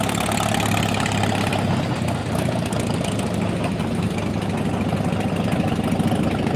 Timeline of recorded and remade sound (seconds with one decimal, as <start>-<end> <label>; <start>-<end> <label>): 0.0-2.2 recorded; 2.2-3.0 remade; 3.0-6.6 recorded

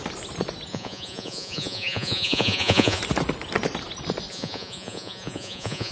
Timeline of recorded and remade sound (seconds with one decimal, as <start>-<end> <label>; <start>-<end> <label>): 0.0-0.7 recorded; 0.7-3.0 remade; 3.0-4.3 recorded; 4.3-5.9 remade

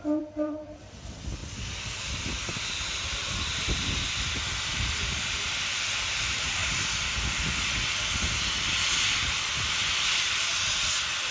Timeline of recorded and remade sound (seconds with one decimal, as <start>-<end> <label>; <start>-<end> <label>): 0.0-1.4 remade; 1.4-1.9 recorded; 1.9-6.6 remade; 6.6-8.7 recorded; 8.7-11.3 remade

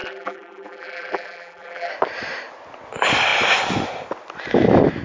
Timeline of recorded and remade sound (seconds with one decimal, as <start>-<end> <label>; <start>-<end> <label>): 0.0-1.9 remade; 1.9-5.0 recorded

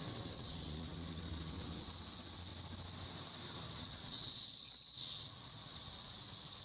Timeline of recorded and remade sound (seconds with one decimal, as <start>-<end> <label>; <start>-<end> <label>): 0.0-2.5 remade; 2.5-3.8 recorded; 3.8-6.6 remade

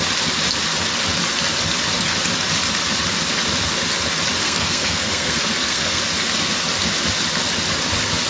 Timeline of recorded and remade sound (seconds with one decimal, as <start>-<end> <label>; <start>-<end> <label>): 0.0-4.4 recorded; 4.4-6.0 remade; 6.0-8.3 recorded